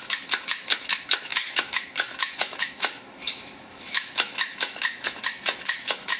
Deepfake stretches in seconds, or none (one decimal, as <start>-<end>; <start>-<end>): 0.0-6.2